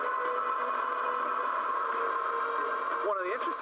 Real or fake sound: real